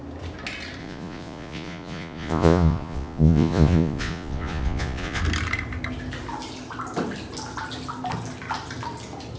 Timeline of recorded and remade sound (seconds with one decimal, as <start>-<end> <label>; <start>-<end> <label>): 0.0-0.8 recorded; 0.8-5.2 remade; 5.2-9.4 recorded